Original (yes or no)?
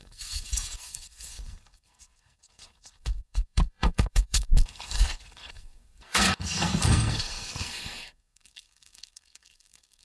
no